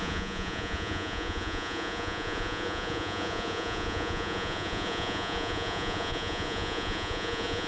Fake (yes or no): yes